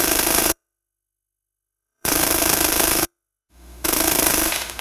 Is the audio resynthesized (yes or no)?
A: yes